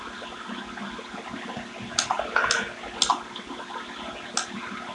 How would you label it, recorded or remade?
recorded